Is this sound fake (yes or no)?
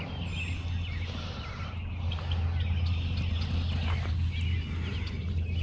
no